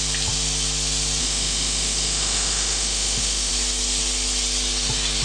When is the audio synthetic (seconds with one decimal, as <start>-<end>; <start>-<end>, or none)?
1.2-3.5